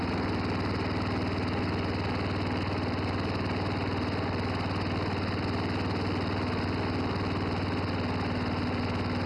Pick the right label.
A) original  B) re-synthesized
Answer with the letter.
A